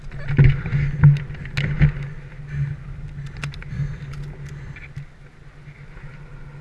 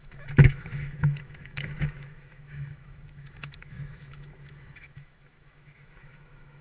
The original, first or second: first